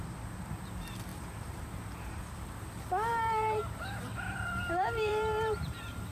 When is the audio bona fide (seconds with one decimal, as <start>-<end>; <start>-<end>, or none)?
0.0-1.1; 2.2-3.1